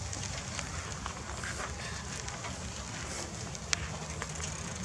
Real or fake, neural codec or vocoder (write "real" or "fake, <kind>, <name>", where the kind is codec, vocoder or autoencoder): real